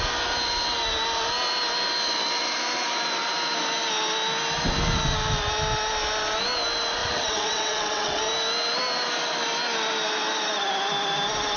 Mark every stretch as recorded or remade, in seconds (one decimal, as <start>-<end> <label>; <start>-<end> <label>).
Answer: 0.0-7.0 recorded; 7.0-8.2 remade; 8.2-11.6 recorded

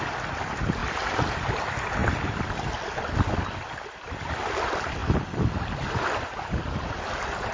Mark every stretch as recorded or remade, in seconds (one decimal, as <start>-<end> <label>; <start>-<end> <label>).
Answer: 0.0-7.5 recorded

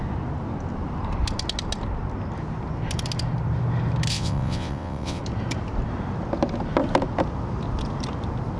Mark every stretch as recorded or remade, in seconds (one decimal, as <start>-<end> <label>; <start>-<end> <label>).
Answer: 0.0-4.1 recorded; 4.1-5.2 remade; 5.2-8.6 recorded